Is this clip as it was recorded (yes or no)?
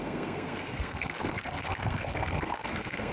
no